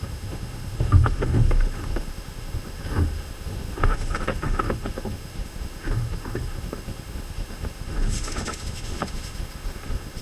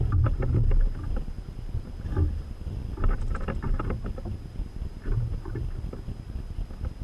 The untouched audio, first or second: second